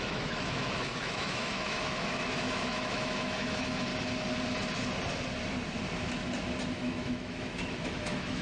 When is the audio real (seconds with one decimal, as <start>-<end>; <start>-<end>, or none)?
3.9-6.7